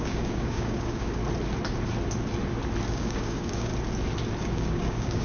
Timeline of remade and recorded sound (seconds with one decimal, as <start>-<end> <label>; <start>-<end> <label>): 0.0-1.2 remade; 1.2-2.9 recorded; 2.9-3.7 remade; 3.7-4.4 recorded; 4.4-5.2 remade